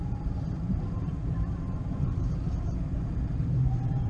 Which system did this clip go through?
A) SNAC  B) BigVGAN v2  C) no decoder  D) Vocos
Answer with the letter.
B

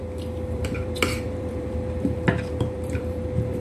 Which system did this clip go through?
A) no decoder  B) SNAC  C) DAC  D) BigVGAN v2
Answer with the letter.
D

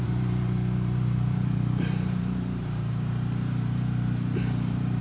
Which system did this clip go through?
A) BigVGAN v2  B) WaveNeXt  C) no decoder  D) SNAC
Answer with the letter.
A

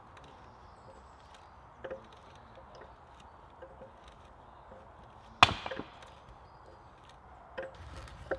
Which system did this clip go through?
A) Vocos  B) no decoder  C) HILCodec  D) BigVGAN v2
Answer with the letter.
B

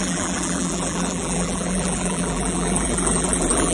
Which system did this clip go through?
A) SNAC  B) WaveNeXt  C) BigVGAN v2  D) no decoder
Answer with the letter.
C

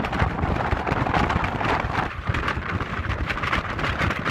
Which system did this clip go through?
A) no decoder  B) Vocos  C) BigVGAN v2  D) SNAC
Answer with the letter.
C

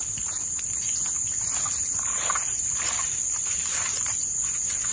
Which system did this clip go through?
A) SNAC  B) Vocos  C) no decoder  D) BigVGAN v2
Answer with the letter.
C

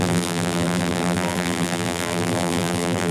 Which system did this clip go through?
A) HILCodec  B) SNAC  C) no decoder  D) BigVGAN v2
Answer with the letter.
D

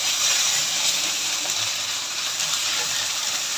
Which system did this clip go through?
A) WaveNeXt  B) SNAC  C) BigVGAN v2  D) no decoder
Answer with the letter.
C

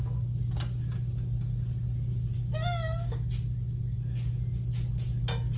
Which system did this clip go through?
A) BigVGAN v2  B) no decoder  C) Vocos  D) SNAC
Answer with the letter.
B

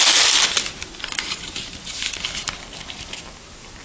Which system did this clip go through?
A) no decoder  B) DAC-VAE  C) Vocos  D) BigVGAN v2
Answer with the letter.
A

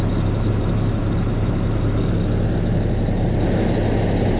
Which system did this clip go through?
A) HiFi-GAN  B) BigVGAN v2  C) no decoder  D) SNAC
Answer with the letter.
C